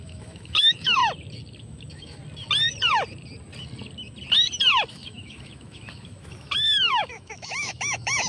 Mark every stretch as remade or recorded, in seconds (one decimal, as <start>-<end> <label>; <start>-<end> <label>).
0.0-1.0 remade; 1.0-1.6 recorded; 1.6-2.2 remade; 2.2-4.9 recorded; 4.9-8.3 remade